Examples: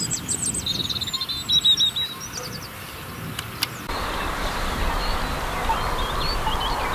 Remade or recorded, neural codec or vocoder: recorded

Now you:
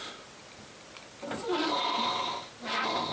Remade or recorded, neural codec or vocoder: recorded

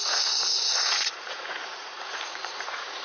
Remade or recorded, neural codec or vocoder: remade, vocoder, Vocos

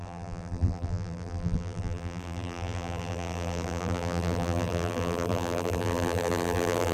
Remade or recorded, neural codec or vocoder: remade, vocoder, BigVGAN v2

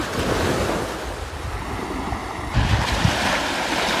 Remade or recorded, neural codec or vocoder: recorded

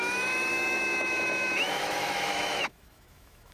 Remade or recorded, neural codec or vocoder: remade, autoencoder, DAC-VAE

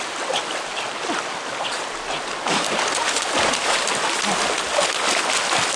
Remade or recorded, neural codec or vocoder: recorded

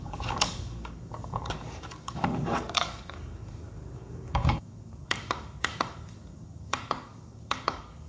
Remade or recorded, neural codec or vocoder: remade, codec, DAC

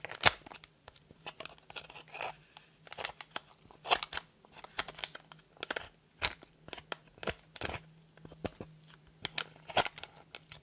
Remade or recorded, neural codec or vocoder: recorded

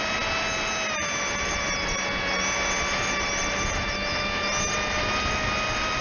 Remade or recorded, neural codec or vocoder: recorded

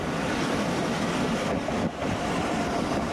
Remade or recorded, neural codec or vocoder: recorded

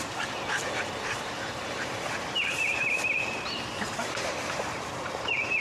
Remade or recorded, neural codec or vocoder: remade, vocoder, BigVGAN v2